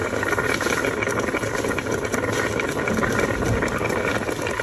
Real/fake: real